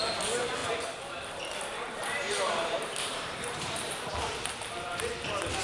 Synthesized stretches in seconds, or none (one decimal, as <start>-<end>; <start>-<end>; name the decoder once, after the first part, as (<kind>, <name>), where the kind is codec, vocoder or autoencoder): 0.6-3.9 (vocoder, BigVGAN v2)